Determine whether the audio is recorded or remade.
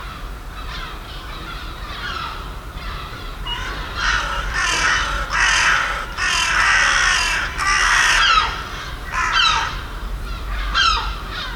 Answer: remade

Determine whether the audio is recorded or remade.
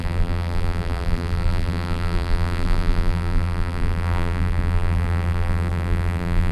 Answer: remade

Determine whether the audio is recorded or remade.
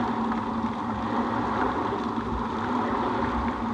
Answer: recorded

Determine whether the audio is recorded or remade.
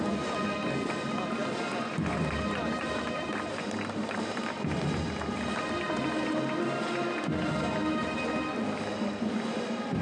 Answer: recorded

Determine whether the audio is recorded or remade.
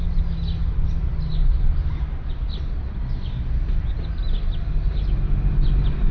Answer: recorded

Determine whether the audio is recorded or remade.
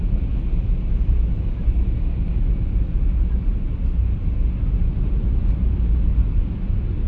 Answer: recorded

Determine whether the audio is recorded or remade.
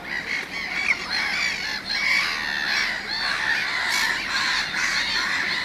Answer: recorded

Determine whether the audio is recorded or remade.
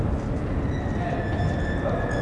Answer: recorded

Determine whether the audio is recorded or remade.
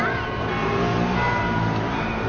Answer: remade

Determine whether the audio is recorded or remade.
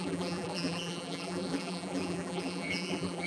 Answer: remade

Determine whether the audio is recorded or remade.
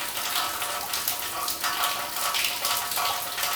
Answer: recorded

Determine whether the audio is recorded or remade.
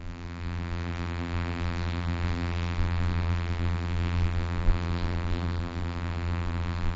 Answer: remade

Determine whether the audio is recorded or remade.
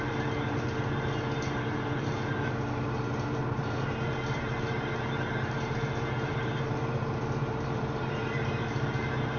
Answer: remade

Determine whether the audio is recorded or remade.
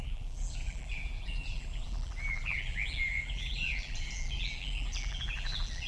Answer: remade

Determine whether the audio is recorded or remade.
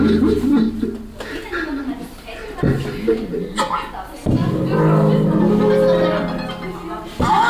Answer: recorded